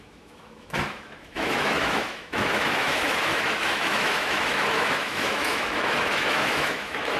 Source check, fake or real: fake